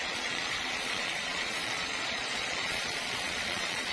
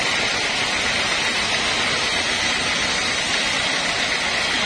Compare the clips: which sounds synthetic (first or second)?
first